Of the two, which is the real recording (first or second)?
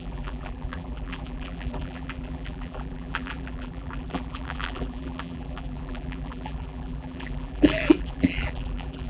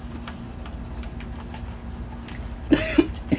second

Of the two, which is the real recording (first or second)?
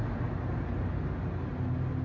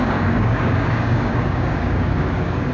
first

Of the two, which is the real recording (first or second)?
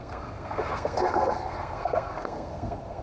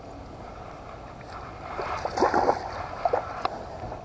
second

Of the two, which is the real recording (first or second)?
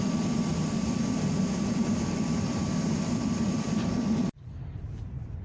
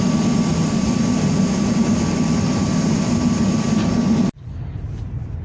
second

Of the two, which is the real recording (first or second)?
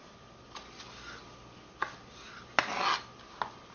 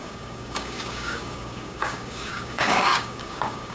first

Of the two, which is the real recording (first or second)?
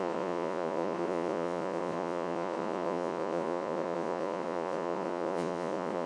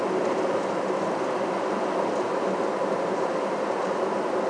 second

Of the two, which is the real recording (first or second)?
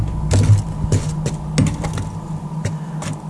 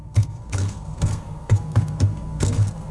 first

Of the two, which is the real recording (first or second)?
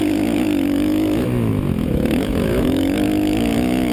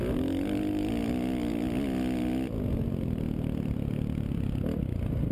second